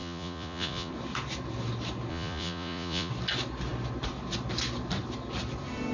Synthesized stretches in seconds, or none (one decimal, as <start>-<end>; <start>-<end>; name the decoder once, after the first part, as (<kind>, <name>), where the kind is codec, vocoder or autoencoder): 0.0-0.9 (vocoder, Vocos); 2.1-3.1